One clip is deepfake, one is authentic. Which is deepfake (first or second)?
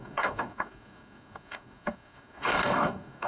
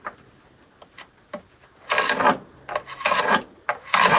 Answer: first